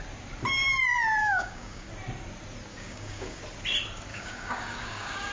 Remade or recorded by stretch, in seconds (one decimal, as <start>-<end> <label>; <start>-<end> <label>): 0.0-1.2 recorded; 1.2-1.9 remade; 1.9-2.7 recorded; 2.7-3.4 remade; 3.4-4.1 recorded; 4.1-5.3 remade